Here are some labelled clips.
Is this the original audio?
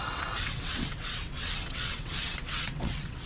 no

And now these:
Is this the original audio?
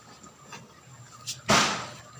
yes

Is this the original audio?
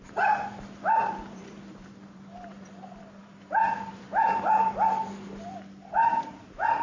no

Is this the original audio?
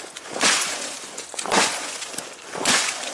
no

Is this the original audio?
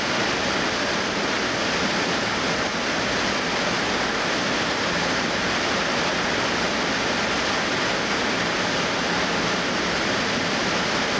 yes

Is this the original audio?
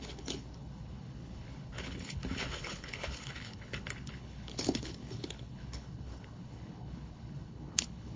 no